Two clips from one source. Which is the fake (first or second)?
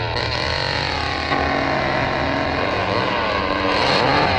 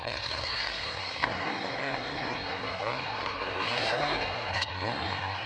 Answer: second